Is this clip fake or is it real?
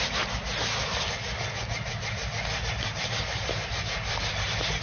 real